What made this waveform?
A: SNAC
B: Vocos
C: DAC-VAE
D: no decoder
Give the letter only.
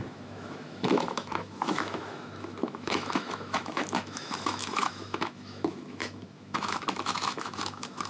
C